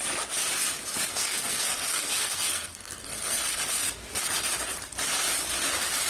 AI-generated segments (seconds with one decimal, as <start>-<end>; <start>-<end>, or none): 1.1-3.6

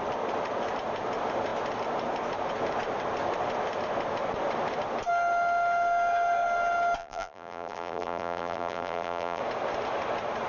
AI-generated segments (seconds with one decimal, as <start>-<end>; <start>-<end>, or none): 7.0-9.4

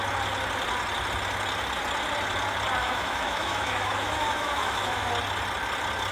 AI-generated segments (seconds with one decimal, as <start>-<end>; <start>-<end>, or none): 2.8-5.1

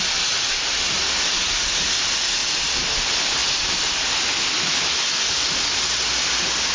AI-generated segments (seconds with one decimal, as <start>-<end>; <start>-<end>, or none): none